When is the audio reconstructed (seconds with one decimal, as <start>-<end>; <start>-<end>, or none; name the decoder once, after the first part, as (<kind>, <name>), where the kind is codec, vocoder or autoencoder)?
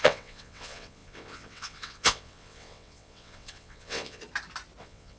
0.0-4.2 (vocoder, WaveNeXt); 4.8-5.2